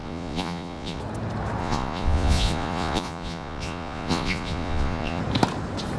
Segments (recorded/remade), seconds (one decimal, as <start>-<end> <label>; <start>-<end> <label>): 0.0-1.0 remade; 1.0-1.6 recorded; 1.6-5.2 remade; 5.2-6.0 recorded